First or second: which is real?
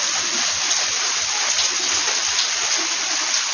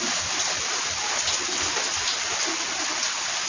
second